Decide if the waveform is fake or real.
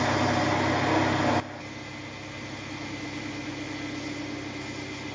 real